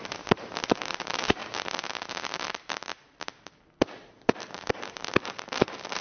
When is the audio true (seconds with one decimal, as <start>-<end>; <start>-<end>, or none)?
1.4-2.3; 2.9-4.7